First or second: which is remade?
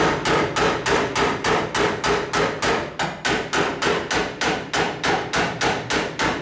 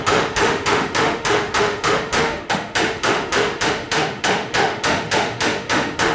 second